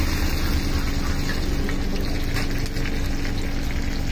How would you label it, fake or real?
real